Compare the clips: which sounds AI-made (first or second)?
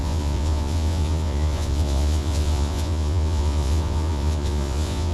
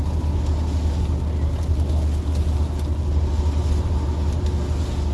first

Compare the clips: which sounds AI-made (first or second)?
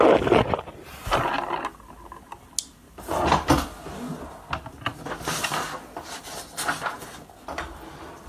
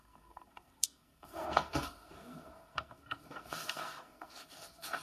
second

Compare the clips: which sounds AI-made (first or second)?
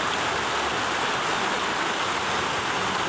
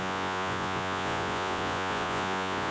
second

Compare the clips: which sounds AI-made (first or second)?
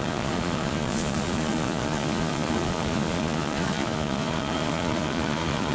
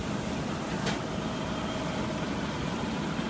first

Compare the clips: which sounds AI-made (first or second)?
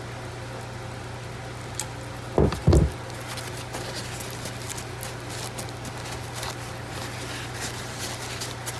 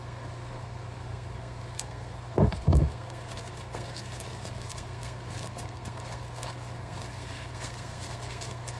second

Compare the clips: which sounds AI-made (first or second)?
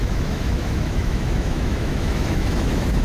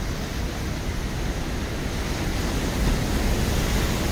first